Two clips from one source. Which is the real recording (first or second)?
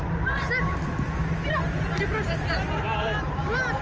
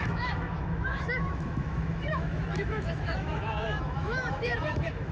first